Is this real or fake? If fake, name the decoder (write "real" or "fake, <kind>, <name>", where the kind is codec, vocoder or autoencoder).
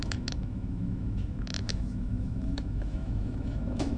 fake, autoencoder, DAC-VAE